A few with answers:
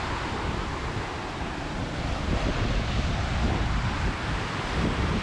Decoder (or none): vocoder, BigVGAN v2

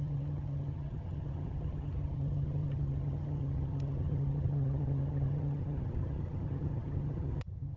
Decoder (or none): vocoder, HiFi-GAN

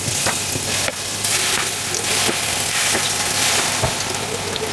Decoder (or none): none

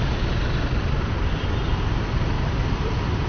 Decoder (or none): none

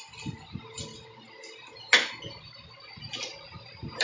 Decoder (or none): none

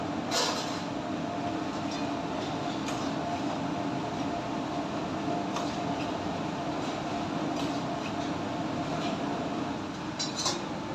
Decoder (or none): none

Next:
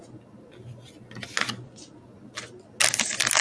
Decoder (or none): none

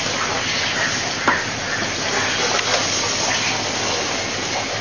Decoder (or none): none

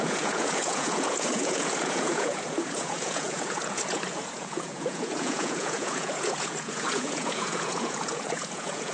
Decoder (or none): vocoder, Vocos